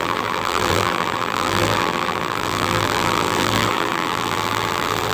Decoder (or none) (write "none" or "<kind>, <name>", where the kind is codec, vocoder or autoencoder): vocoder, BigVGAN v2